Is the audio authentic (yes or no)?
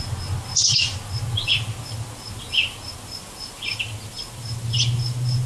yes